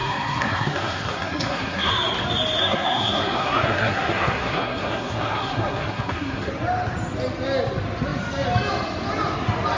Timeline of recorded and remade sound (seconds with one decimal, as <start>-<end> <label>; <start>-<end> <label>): 0.0-1.9 remade; 1.9-2.6 recorded; 2.6-6.5 remade; 6.5-9.8 recorded

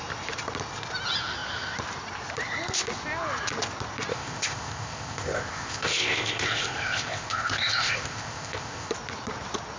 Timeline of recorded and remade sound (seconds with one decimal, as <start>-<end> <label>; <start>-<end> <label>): 0.0-4.1 recorded; 4.1-8.9 remade; 8.9-9.8 recorded